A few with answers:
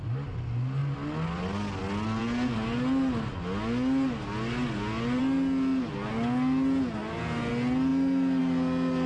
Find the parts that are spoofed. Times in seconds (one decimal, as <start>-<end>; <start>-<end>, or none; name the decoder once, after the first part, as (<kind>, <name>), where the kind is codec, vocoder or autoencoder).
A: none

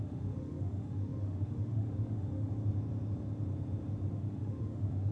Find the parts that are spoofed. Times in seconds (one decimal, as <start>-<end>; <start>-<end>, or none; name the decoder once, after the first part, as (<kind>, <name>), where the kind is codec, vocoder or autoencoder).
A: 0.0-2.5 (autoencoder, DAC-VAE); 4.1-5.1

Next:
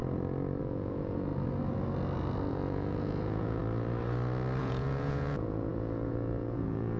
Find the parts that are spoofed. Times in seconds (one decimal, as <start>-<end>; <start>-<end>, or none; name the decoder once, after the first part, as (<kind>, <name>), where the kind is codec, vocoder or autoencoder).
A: 0.6-1.3 (vocoder, Vocos); 2.5-3.6; 4.6-7.0